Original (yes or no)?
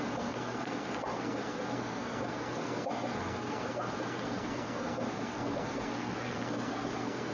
no